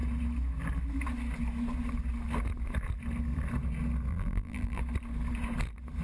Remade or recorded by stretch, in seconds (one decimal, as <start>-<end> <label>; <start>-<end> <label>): 0.0-4.1 recorded; 4.1-4.8 remade; 4.8-6.0 recorded